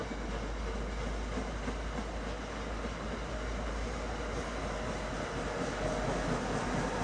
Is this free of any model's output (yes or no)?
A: yes